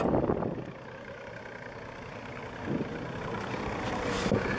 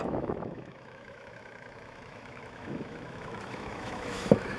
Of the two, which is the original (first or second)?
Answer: first